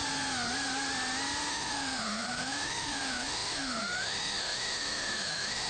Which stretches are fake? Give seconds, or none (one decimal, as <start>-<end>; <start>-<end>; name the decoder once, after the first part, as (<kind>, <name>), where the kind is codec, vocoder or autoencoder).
1.5-5.7 (autoencoder, DAC-VAE)